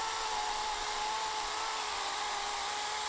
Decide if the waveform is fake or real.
real